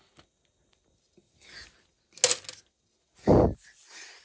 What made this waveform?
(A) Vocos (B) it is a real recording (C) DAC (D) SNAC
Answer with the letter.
B